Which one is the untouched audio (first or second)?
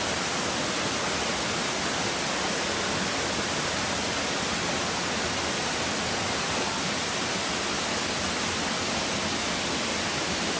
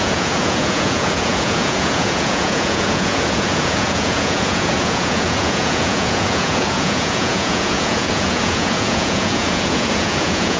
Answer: first